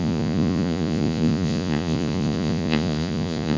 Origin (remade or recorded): remade